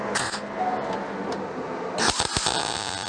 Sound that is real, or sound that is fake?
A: real